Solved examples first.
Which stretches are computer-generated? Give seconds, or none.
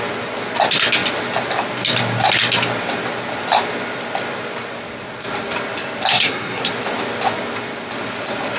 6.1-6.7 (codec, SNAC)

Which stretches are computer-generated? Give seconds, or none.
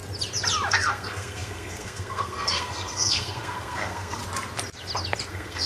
0.7-4.2 (codec, SNAC); 5.3-5.7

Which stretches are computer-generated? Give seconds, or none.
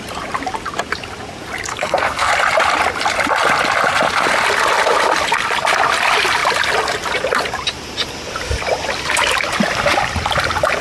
1.7-2.3 (codec, SNAC)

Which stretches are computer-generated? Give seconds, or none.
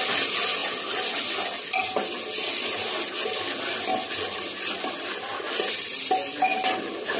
none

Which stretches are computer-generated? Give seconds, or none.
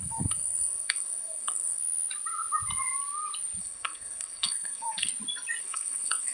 0.0-1.8 (codec, SNAC); 3.6-5.1; 5.6-6.3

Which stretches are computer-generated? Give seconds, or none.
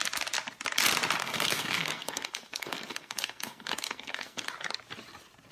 1.2-4.5 (codec, SNAC)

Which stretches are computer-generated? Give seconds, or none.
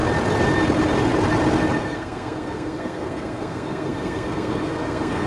1.8-5.3 (codec, SNAC)